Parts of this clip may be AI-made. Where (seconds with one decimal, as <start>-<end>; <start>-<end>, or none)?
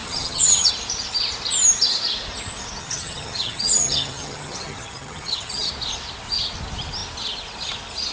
0.0-0.7; 2.8-5.7